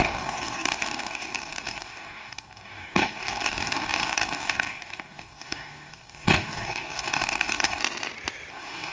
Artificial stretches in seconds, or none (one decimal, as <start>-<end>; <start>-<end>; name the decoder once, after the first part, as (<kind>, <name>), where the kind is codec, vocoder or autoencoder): 0.0-7.8 (codec, DAC); 8.5-8.9